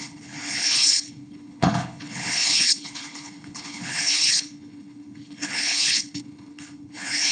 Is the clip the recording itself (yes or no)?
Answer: no